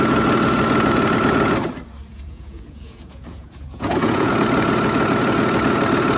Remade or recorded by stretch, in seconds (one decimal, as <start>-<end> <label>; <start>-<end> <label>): 0.0-2.1 recorded; 2.1-4.3 remade; 4.3-6.2 recorded